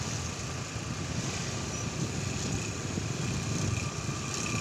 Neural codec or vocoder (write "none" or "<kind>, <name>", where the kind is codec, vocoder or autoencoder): none